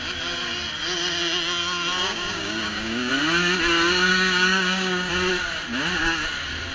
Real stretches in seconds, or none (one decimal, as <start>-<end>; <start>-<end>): 0.0-2.0; 3.1-4.1; 5.1-6.7